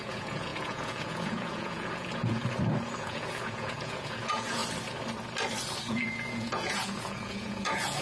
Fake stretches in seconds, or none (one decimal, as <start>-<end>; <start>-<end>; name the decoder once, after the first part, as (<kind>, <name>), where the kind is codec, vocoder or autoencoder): 0.0-2.4 (vocoder, Vocos); 3.0-4.6; 5.9-8.0